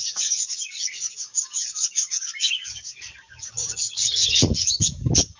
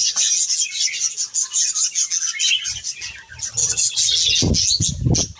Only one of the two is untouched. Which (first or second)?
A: second